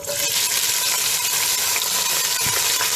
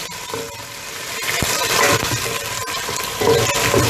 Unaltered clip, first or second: first